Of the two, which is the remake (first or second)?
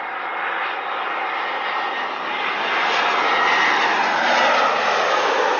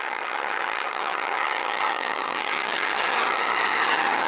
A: second